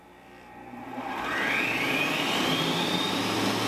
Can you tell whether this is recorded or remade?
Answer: recorded